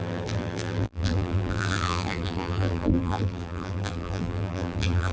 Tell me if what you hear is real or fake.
fake